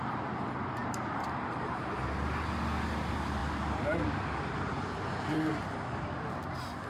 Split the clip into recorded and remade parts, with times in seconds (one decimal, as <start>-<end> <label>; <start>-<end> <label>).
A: 0.0-0.8 recorded; 0.8-1.9 remade; 1.9-6.9 recorded